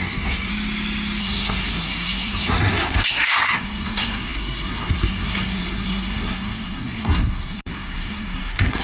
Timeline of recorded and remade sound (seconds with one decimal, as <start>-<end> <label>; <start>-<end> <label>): 0.0-0.5 remade; 0.5-1.2 recorded; 1.2-8.8 remade